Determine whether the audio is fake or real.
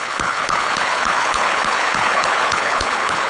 fake